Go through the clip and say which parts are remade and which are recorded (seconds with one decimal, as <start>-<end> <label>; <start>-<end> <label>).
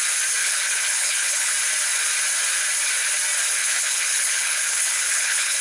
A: 0.0-0.4 recorded; 0.4-1.5 remade; 1.5-3.6 recorded; 3.6-5.6 remade